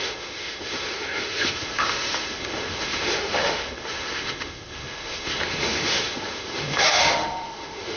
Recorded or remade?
remade